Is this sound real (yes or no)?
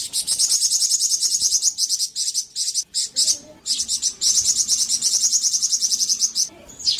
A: yes